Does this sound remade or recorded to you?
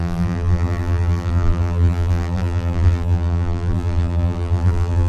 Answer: remade